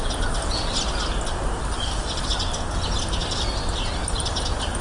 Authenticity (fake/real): real